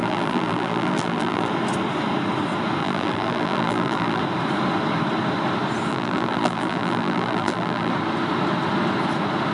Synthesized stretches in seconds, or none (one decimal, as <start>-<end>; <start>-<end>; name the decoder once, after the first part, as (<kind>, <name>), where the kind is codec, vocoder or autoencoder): 0.0-1.5 (vocoder, BigVGAN v2); 2.8-4.2; 5.9-7.9